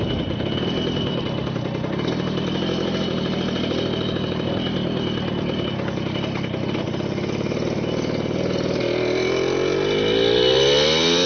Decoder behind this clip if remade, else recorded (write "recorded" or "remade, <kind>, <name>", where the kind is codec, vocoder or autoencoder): recorded